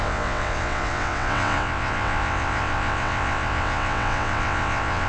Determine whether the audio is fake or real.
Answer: fake